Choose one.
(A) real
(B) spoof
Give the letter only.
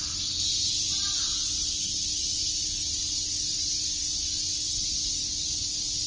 A